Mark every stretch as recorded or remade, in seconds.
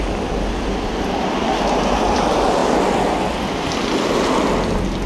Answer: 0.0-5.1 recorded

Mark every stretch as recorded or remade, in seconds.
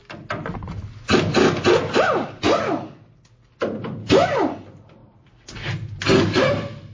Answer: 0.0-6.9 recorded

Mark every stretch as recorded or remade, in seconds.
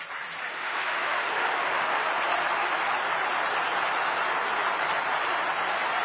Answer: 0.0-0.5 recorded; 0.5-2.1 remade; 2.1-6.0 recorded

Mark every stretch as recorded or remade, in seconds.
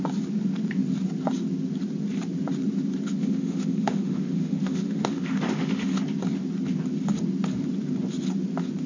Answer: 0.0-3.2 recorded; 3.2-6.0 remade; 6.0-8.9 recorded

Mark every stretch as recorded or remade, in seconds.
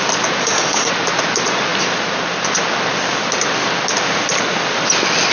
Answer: 0.0-0.4 recorded; 0.4-0.9 remade; 0.9-5.3 recorded